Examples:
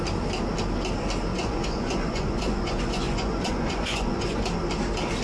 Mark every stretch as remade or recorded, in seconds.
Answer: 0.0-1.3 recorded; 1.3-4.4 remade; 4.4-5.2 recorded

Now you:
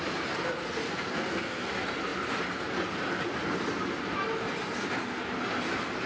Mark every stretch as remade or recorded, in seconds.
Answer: 0.0-0.8 recorded; 0.8-1.7 remade; 1.7-6.1 recorded